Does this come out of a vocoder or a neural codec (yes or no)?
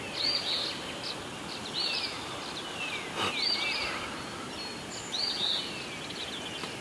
no